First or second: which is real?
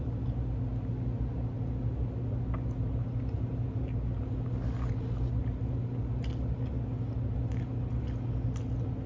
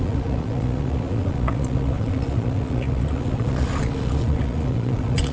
first